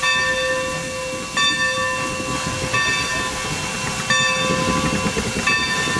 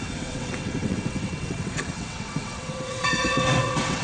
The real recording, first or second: first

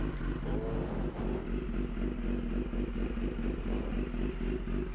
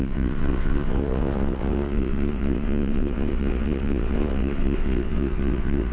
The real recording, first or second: first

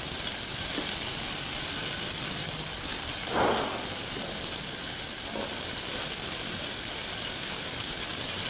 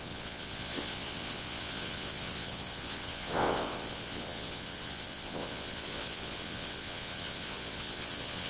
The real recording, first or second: first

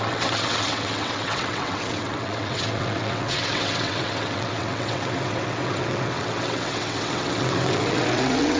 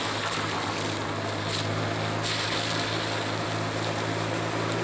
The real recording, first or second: second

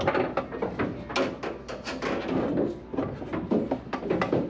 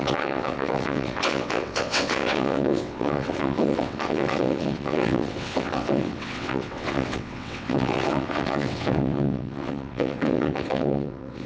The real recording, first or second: first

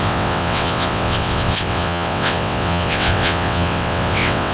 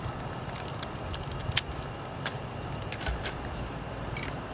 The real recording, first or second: second